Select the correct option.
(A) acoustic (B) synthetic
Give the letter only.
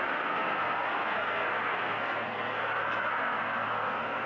B